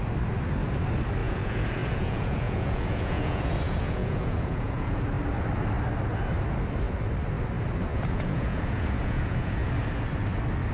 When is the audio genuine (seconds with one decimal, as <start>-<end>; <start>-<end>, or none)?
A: 0.0-1.2; 5.0-7.9; 9.7-10.7